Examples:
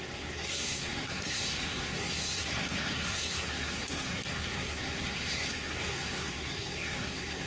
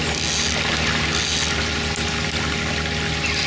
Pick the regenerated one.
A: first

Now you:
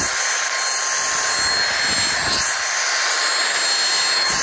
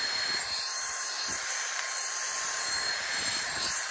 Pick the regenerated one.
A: second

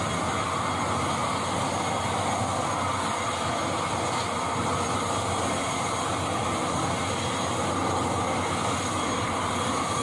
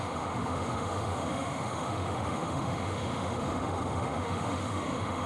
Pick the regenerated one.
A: second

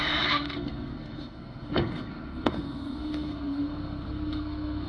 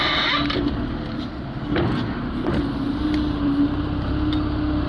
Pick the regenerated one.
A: first